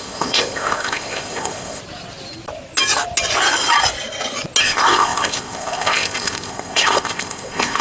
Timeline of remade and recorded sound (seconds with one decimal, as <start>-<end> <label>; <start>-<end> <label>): 0.0-1.8 remade; 1.8-4.6 recorded; 4.6-7.8 remade